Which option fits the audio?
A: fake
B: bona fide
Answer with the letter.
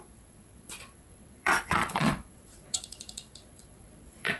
A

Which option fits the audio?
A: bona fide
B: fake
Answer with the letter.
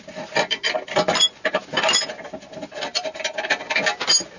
B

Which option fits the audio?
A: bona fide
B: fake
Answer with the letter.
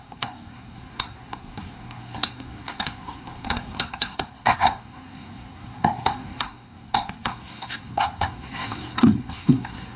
B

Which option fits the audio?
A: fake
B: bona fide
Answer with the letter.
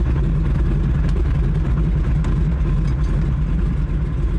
B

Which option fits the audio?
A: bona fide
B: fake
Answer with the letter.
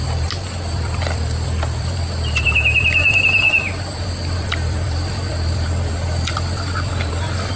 B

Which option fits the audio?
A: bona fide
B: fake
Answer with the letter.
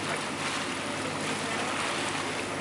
A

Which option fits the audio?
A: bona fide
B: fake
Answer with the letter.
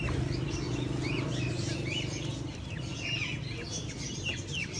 A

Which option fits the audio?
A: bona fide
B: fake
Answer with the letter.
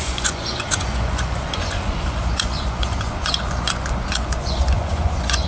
B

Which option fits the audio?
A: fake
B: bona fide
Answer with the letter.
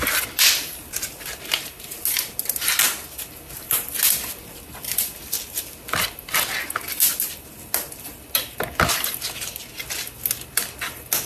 B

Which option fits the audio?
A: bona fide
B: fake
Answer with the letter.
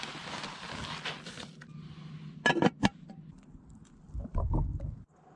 A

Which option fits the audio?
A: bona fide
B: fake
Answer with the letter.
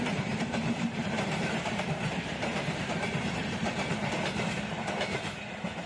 B